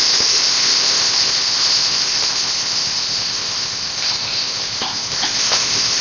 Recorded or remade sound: remade